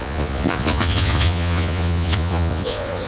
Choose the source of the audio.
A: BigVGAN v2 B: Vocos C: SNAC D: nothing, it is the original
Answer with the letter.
B